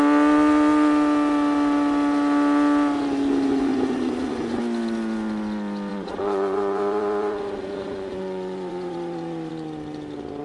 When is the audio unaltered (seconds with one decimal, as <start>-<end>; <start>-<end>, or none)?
0.0-3.5; 4.6-5.9; 9.5-10.4